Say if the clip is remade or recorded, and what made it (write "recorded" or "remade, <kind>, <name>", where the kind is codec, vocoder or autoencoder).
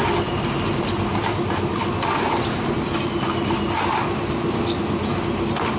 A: recorded